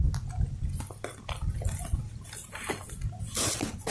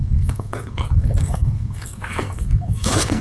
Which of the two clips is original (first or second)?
first